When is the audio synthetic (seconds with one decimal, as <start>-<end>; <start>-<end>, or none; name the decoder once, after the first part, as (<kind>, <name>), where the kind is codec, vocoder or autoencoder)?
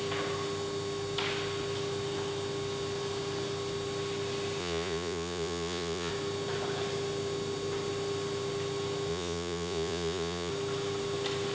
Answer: 4.6-6.1 (vocoder, Vocos); 9.1-10.5